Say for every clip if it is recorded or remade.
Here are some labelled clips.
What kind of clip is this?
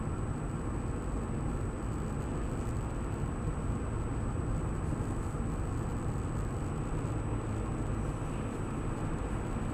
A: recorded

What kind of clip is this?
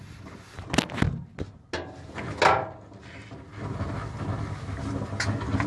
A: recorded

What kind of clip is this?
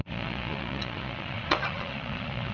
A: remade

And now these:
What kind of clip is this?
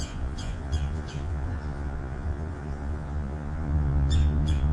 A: remade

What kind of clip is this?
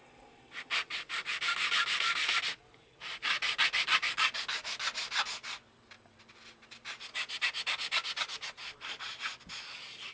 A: recorded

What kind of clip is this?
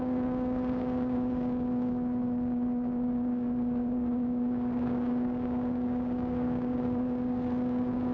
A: remade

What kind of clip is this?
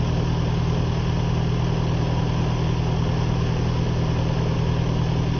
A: recorded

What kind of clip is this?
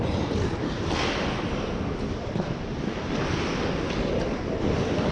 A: recorded